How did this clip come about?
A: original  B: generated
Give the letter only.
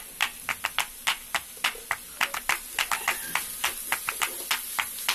A